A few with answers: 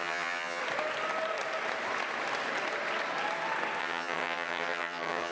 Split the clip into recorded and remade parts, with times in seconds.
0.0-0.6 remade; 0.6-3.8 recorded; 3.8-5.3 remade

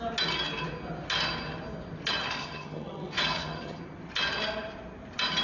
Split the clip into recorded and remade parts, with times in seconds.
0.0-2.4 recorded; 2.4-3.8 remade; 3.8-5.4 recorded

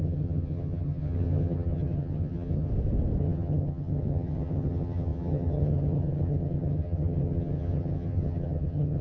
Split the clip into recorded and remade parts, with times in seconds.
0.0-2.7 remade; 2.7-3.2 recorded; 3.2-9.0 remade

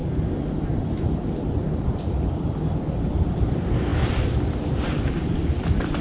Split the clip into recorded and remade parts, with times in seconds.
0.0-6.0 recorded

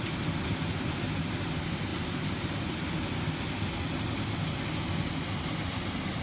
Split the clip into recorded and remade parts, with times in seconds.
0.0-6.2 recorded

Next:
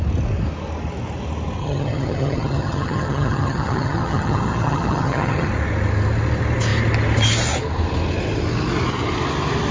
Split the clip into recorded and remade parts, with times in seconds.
0.0-1.6 recorded; 1.6-5.5 remade; 5.5-9.7 recorded

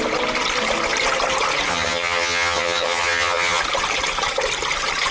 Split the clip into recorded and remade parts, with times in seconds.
0.0-1.7 recorded; 1.7-3.6 remade; 3.6-5.1 recorded

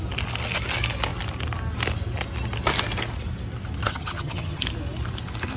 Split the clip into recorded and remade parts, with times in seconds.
0.0-3.8 recorded; 3.8-4.6 remade; 4.6-5.6 recorded